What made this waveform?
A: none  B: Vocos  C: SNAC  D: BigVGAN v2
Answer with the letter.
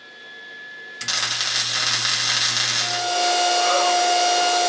A